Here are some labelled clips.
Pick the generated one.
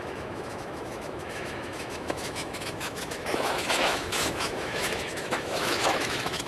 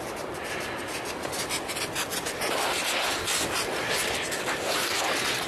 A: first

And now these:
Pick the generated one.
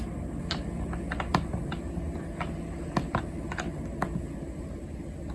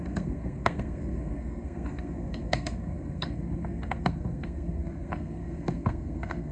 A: second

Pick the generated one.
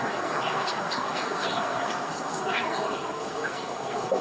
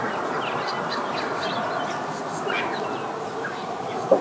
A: first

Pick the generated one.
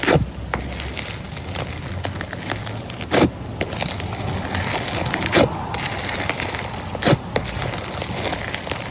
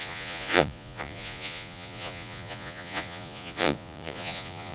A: second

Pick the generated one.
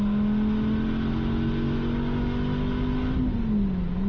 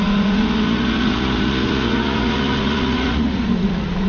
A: second